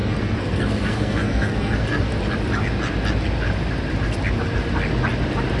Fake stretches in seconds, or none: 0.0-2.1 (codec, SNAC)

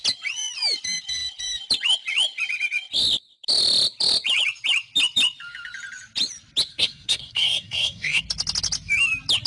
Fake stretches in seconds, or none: 6.7-8.2 (codec, SNAC)

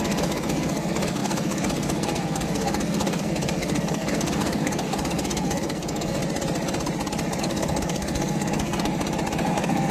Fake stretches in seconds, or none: 0.0-6.2 (codec, SNAC); 7.4-8.9; 9.5-9.9

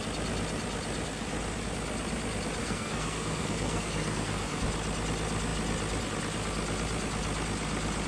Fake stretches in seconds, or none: 2.6-4.6 (codec, SNAC)

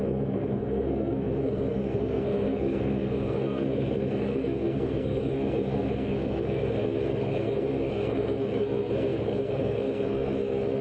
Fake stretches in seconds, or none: 0.0-10.8 (codec, SNAC)

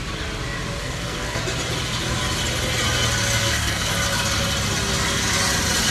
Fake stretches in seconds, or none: 0.8-1.4 (codec, SNAC); 3.4-3.9